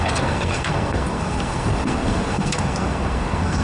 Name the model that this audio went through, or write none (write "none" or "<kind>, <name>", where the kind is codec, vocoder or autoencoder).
codec, SNAC